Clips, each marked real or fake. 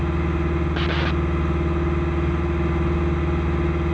real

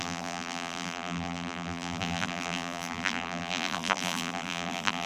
fake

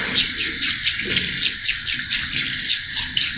real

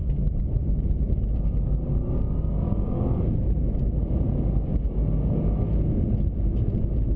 real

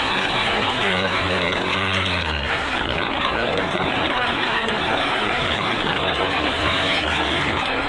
fake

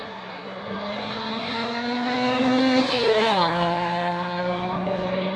fake